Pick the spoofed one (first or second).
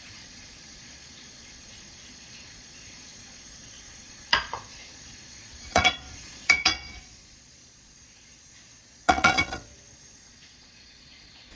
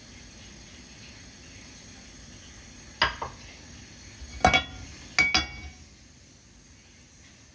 first